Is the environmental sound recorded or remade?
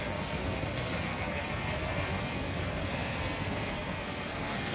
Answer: remade